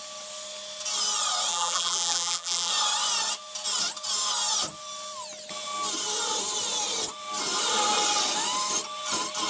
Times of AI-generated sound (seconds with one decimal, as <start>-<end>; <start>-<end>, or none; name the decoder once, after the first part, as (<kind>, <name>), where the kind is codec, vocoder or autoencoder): 1.5-2.7 (vocoder, BigVGAN v2)